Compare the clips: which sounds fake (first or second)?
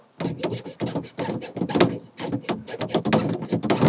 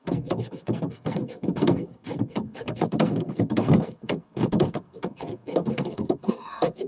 second